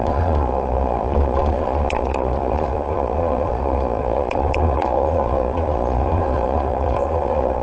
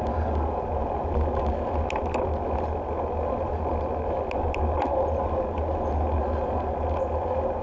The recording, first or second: second